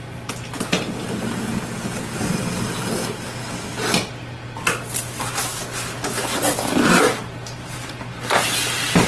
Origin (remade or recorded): recorded